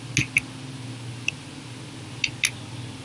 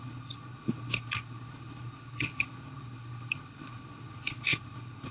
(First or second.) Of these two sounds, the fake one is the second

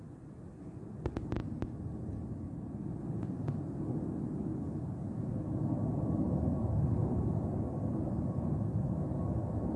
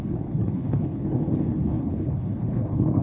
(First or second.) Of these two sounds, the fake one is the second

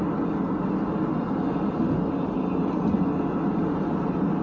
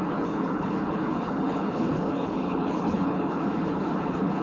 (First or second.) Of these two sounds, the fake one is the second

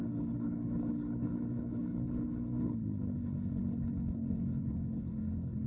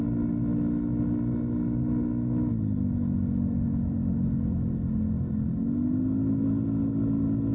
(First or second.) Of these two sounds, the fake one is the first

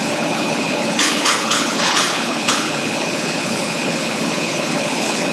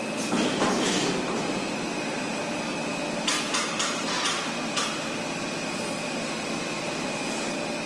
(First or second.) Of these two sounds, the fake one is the first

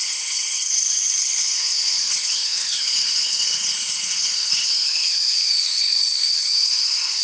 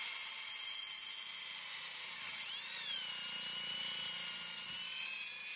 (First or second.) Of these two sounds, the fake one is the first